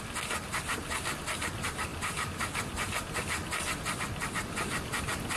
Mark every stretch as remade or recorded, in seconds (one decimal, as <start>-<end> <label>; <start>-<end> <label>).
0.0-5.4 recorded